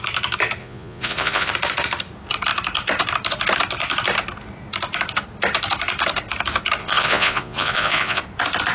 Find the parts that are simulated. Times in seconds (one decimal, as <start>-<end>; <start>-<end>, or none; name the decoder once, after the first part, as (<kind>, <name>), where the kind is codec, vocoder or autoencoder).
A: 0.6-1.5 (vocoder, Vocos); 6.8-8.2